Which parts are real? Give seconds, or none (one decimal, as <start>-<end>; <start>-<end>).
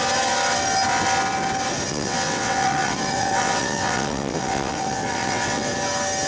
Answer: 0.0-1.9; 5.7-6.3